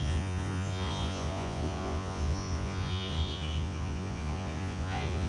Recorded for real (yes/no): no